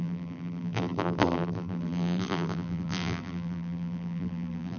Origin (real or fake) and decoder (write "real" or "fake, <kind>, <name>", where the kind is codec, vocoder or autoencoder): fake, vocoder, BigVGAN v2